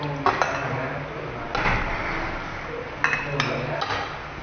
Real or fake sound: real